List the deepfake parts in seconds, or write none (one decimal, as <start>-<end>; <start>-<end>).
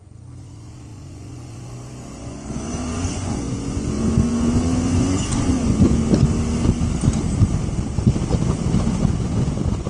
0.0-6.0; 8.9-9.9